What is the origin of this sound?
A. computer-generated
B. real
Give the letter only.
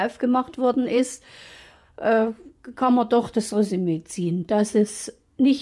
A